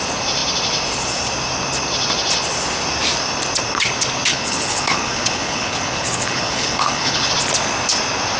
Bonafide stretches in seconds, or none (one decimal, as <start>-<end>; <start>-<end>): 0.0-4.3; 7.3-8.4